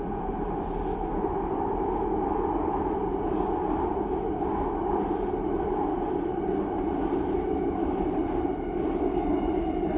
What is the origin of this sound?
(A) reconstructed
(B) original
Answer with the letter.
B